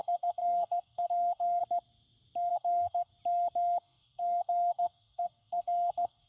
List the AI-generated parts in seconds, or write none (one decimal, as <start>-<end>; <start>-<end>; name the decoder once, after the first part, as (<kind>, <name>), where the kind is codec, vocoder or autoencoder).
0.0-1.6 (codec, DAC); 2.5-3.1; 3.8-6.3